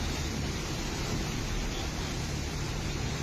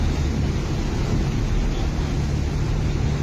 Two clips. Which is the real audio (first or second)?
second